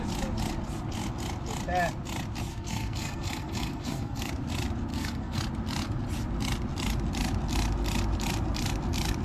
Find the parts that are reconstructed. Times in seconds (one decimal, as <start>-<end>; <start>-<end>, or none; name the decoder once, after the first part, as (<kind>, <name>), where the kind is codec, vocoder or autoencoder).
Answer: 2.5-4.3 (codec, SNAC); 4.9-5.4